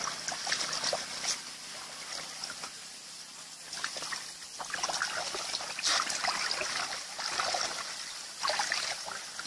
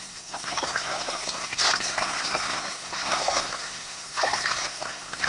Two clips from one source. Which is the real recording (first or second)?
first